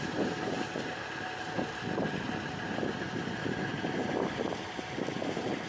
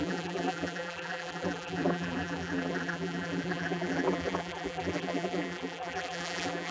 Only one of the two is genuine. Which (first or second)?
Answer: first